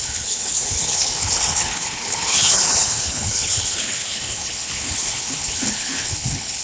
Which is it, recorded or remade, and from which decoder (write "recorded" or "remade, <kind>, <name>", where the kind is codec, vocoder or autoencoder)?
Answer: remade, codec, HILCodec